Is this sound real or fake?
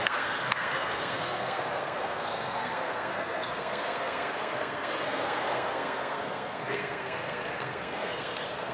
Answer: fake